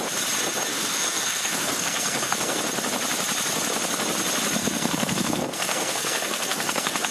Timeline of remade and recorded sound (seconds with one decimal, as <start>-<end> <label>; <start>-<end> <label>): 0.0-0.7 recorded; 0.7-2.6 remade; 2.6-4.6 recorded; 4.6-7.1 remade